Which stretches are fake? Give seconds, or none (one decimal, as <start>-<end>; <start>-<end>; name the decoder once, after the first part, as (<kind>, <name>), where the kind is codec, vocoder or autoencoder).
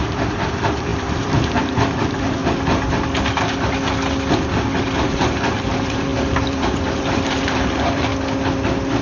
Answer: 0.0-2.4 (vocoder, BigVGAN v2); 4.8-8.1